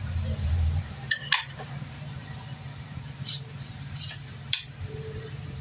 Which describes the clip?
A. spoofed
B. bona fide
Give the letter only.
A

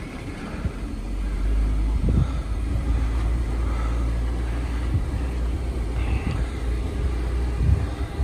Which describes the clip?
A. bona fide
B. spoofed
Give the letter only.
B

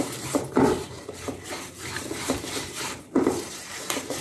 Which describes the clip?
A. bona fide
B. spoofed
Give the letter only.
B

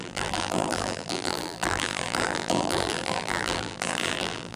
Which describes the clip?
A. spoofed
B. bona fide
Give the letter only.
A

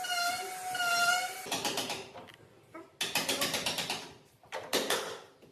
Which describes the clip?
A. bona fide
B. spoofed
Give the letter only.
A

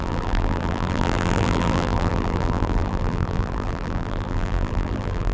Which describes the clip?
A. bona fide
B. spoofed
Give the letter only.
B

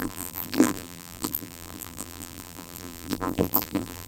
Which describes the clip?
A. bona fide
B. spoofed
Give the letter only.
B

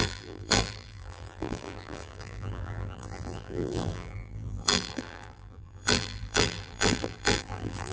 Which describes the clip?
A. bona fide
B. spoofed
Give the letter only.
B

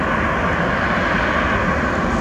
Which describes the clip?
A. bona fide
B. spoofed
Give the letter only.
A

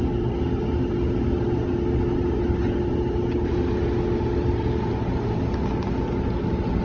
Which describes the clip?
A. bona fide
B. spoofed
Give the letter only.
A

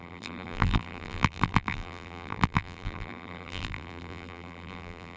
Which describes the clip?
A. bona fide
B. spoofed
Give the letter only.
B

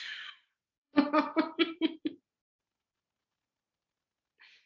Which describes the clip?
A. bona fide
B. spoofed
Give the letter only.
B